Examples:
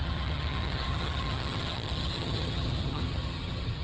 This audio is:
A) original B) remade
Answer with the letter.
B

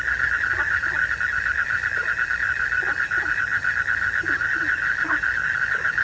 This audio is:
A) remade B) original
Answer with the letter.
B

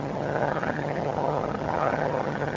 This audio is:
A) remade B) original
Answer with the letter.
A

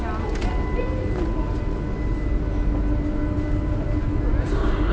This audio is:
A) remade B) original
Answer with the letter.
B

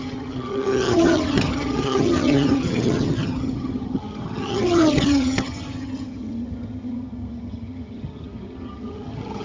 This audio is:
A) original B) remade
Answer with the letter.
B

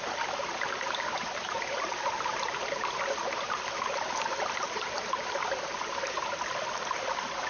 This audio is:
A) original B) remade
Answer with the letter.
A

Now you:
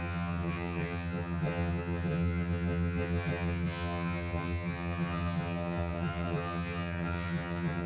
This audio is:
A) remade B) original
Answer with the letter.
A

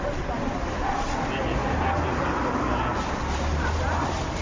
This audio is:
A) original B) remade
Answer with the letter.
A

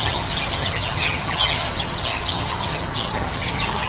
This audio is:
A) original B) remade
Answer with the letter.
B